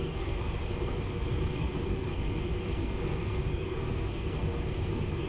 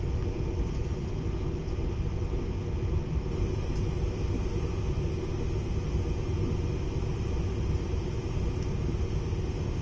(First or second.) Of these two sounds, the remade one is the first